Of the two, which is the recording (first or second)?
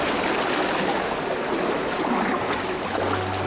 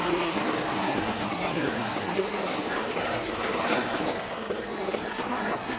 first